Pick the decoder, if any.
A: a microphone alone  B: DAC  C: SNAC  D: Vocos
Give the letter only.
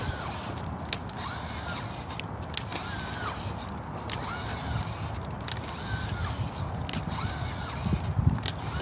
A